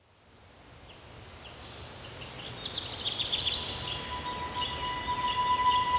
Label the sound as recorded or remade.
recorded